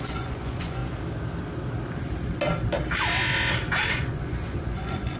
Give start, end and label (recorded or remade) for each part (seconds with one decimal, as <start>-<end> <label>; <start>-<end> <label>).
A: 0.0-0.8 remade; 0.8-3.9 recorded; 3.9-5.2 remade